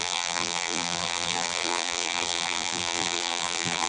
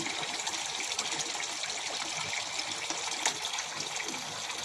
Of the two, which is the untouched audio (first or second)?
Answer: second